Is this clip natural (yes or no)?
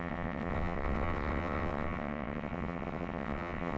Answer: no